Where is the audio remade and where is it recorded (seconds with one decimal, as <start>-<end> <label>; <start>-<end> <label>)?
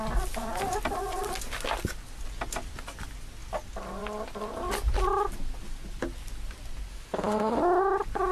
0.0-6.9 recorded; 6.9-7.6 remade; 7.6-8.3 recorded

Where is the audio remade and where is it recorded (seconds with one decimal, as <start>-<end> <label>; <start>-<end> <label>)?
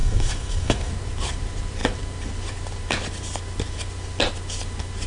0.0-0.9 remade; 0.9-5.1 recorded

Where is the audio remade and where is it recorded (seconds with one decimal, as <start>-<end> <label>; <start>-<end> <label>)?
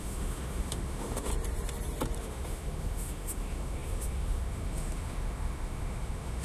0.0-1.3 remade; 1.3-2.2 recorded; 2.2-6.4 remade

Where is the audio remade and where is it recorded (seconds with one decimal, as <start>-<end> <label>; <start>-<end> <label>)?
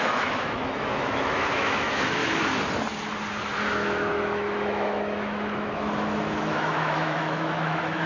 0.0-2.2 remade; 2.2-3.6 recorded; 3.6-8.1 remade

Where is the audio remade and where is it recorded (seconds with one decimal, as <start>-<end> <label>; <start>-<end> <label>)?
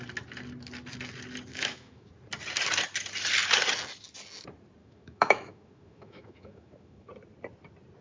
0.0-1.5 recorded; 1.5-2.1 remade; 2.1-4.8 recorded; 4.8-7.1 remade; 7.1-8.0 recorded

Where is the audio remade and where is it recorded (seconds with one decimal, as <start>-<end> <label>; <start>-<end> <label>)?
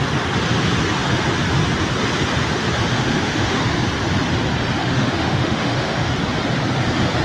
0.0-2.9 recorded; 2.9-3.6 remade; 3.6-4.8 recorded; 4.8-6.1 remade; 6.1-7.2 recorded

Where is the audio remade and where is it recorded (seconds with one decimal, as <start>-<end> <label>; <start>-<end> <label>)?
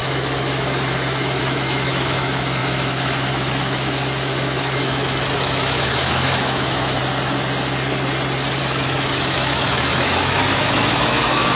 0.0-7.0 remade; 7.0-8.6 recorded; 8.6-11.6 remade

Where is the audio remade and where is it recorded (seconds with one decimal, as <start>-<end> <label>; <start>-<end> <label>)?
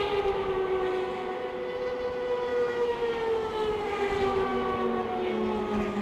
0.0-2.5 recorded; 2.5-3.2 remade; 3.2-6.0 recorded